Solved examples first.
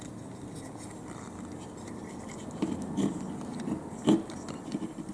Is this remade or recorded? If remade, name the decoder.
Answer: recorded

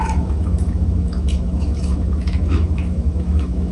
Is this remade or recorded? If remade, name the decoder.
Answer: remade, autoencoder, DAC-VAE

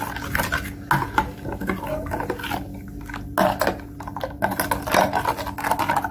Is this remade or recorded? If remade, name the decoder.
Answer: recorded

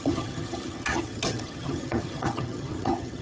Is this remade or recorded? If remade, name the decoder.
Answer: remade, vocoder, HiFi-GAN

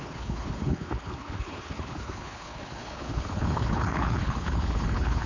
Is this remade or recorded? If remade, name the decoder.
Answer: remade, codec, HILCodec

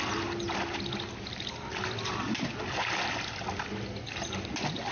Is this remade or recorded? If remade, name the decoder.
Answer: recorded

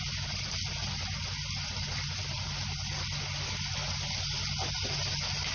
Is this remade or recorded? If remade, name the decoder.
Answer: recorded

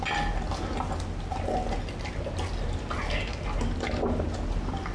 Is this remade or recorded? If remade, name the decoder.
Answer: recorded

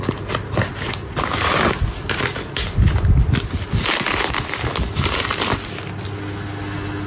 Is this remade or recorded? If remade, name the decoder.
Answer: recorded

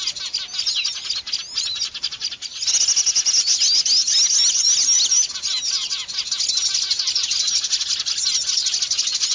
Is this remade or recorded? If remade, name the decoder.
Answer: recorded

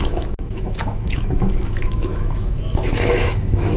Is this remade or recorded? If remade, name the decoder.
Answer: remade, autoencoder, DAC-VAE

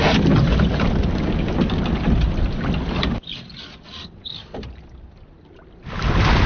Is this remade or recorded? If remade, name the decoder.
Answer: recorded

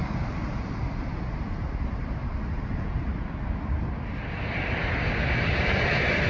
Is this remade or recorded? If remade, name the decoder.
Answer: recorded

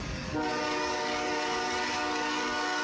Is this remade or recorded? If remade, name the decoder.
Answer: remade, codec, DAC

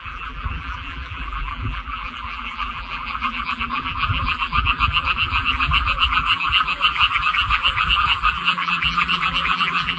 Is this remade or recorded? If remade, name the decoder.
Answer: remade, vocoder, BigVGAN v2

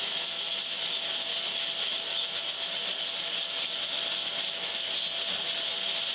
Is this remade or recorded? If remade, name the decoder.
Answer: recorded